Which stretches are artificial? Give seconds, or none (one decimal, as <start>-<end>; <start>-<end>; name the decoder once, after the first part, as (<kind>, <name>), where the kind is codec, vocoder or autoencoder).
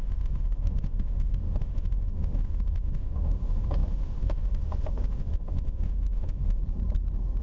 0.0-6.6 (autoencoder, DAC-VAE)